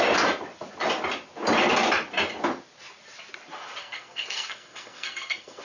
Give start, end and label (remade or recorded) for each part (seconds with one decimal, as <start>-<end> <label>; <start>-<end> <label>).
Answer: 0.0-3.8 recorded; 3.8-5.6 remade